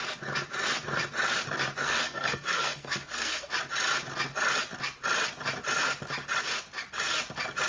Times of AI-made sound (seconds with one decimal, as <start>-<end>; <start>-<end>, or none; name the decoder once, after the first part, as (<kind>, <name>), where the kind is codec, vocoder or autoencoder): 1.8-3.5 (codec, SNAC)